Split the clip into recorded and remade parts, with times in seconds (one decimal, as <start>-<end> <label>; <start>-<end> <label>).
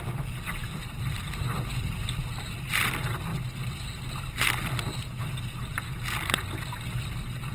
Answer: 0.0-0.6 recorded; 0.6-1.2 remade; 1.2-7.5 recorded